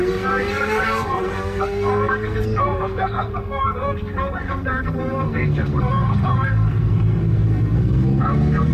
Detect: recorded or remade remade